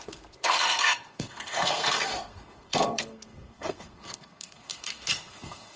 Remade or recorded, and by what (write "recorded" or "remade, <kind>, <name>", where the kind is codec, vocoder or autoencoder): remade, codec, SNAC